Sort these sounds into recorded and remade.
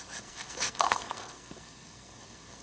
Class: remade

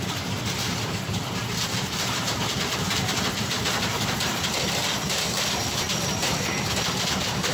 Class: remade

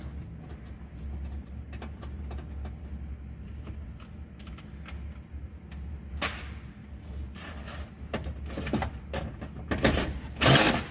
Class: recorded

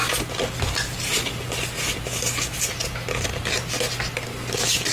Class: recorded